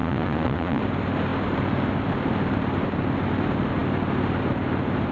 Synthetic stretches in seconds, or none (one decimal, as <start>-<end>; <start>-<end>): 0.0-0.8